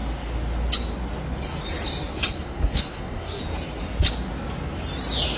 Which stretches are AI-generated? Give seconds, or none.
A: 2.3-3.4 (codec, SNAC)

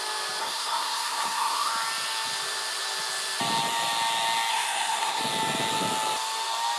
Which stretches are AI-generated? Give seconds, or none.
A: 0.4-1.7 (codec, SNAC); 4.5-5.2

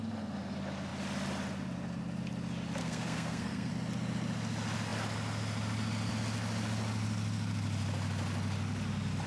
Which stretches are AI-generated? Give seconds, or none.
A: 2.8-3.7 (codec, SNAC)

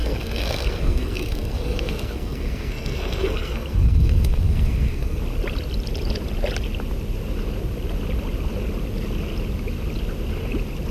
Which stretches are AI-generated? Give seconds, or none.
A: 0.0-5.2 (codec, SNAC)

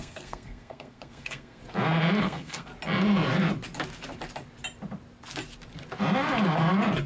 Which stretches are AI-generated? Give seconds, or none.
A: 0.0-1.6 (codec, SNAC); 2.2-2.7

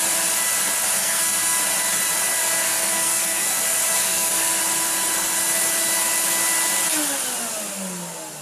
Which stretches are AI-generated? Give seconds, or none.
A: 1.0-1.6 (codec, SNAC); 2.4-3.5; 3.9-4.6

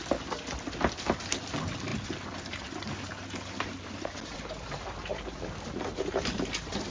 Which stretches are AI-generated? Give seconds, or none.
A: none